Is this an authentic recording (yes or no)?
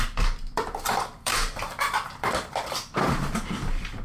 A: no